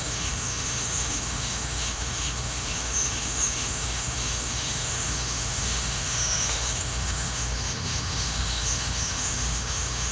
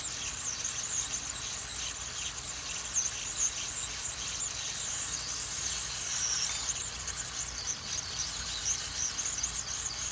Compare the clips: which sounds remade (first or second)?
first